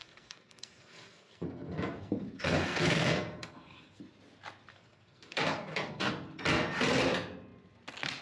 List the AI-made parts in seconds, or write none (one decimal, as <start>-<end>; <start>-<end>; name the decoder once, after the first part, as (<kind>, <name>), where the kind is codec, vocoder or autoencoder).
0.0-4.0 (codec, SNAC); 4.7-6.1